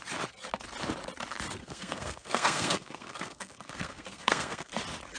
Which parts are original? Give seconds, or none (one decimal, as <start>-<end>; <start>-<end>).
0.0-1.6; 4.7-5.2